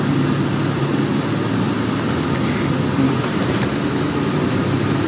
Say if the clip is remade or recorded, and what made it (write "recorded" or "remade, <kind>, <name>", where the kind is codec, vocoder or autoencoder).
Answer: recorded